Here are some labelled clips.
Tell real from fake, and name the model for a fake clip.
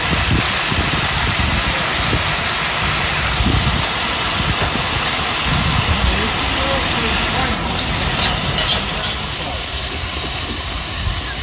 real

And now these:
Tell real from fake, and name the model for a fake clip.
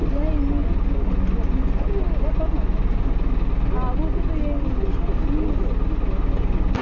real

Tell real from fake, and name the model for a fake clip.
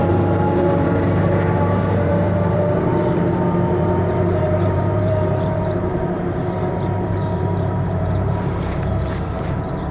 fake, vocoder, BigVGAN v2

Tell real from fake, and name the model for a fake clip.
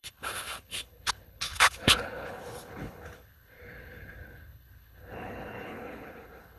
fake, codec, HILCodec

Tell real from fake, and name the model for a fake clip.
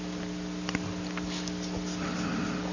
real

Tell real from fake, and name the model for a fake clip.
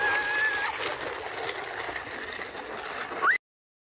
real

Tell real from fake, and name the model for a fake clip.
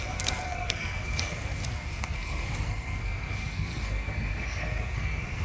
fake, codec, SNAC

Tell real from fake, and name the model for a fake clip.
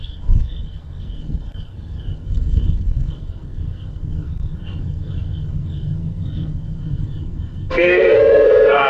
fake, codec, SNAC